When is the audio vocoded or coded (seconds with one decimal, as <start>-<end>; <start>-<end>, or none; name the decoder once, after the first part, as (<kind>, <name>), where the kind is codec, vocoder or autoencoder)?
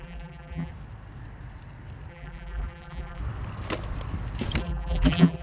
0.0-0.7 (vocoder, BigVGAN v2); 2.1-3.2; 4.6-5.4